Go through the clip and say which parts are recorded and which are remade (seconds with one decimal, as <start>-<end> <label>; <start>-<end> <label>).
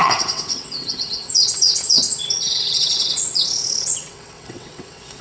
0.0-5.2 remade